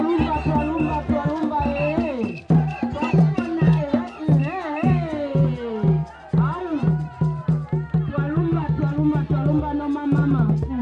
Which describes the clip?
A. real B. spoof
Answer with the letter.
A